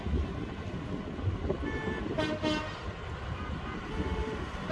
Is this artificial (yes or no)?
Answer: no